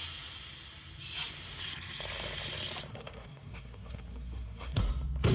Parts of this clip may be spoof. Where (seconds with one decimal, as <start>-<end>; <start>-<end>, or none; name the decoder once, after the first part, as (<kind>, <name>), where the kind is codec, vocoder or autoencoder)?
2.9-4.8 (codec, SNAC)